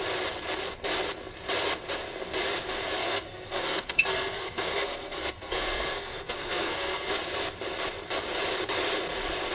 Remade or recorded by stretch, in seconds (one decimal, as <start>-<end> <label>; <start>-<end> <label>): 0.0-3.0 recorded; 3.0-7.1 remade; 7.1-9.5 recorded